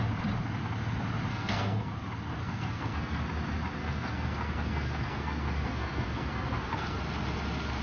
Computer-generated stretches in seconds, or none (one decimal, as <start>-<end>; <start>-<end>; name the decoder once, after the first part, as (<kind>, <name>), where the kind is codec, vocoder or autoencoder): 1.3-1.9 (codec, SNAC); 2.4-3.2; 3.8-7.0